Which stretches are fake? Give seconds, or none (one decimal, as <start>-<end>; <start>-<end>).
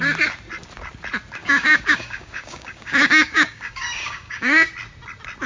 1.4-4.7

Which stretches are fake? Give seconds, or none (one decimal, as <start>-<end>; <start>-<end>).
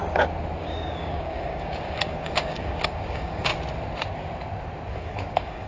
0.6-3.5; 4.9-5.7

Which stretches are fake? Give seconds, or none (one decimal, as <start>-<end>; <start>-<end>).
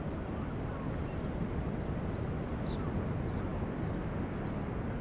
none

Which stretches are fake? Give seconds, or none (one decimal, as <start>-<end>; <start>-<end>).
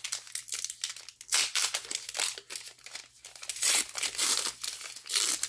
none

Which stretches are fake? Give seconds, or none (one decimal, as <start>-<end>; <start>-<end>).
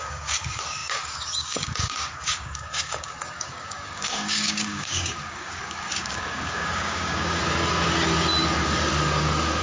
0.0-7.4